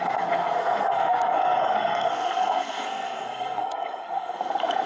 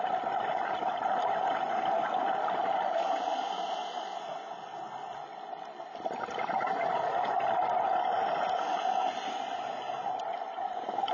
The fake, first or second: first